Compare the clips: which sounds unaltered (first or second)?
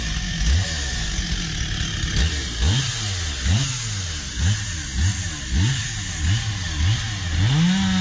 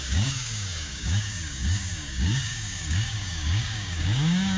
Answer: first